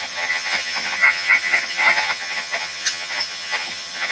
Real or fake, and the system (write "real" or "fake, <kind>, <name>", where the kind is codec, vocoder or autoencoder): fake, vocoder, HiFi-GAN